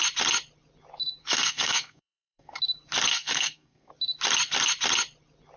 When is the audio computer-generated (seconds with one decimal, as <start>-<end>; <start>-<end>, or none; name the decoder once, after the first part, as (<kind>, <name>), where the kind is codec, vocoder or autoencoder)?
1.2-2.6 (codec, SNAC); 3.1-3.9